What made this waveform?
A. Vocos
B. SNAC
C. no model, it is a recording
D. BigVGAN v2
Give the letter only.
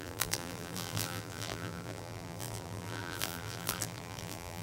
D